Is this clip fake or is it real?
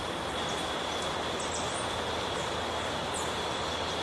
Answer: real